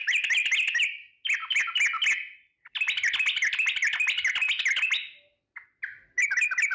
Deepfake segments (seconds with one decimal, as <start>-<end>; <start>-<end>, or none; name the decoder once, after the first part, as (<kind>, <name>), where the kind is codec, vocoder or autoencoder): none